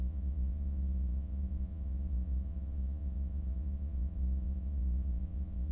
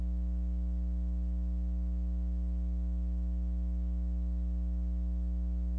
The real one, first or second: second